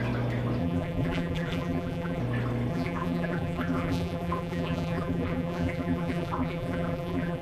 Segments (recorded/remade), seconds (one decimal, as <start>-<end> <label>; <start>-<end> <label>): 0.0-0.6 recorded; 0.6-2.2 remade; 2.2-2.7 recorded; 2.7-7.4 remade